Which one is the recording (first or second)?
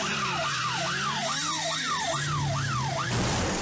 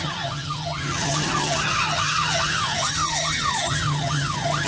first